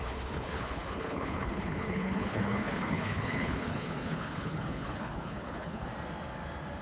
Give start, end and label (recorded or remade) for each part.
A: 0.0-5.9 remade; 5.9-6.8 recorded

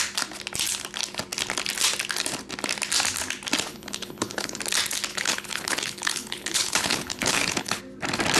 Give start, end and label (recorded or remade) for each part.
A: 0.0-3.7 recorded; 3.7-4.6 remade; 4.6-5.1 recorded; 5.1-7.8 remade; 7.8-8.4 recorded